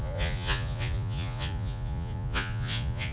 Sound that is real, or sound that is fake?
fake